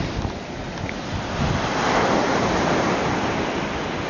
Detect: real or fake real